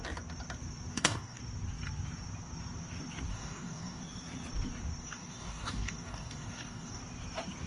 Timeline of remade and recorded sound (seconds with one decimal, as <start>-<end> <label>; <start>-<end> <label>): 0.0-0.9 recorded; 0.9-1.4 remade; 1.4-3.3 recorded; 3.3-4.0 remade; 4.0-5.0 recorded; 5.0-7.0 remade; 7.0-7.7 recorded